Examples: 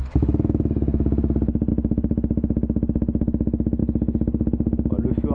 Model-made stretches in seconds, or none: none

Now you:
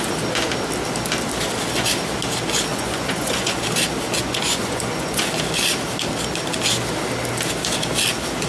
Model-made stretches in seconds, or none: 2.7-3.6; 4.2-5.2

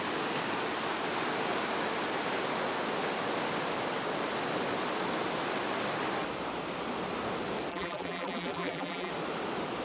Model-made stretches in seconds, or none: 7.7-9.1

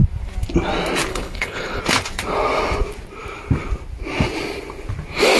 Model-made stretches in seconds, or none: 1.1-1.8

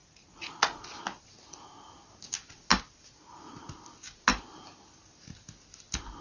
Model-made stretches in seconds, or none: 0.0-0.8